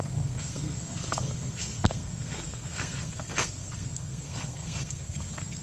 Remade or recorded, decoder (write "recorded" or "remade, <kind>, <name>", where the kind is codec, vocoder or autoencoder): remade, codec, SNAC